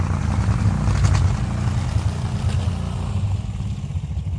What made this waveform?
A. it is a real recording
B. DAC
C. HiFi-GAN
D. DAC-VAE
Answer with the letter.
A